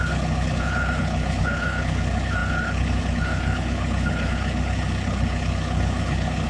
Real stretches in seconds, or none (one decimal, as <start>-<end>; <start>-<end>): none